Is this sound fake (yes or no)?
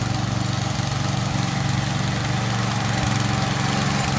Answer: no